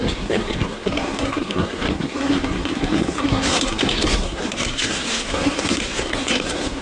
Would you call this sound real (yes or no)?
no